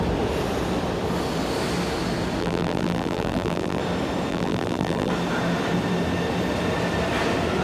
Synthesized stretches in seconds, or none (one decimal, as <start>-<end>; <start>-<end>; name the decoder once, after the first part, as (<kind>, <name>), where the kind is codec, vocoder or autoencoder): 2.4-3.8 (vocoder, BigVGAN v2); 4.3-5.1